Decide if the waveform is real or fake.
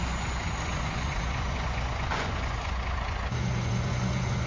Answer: fake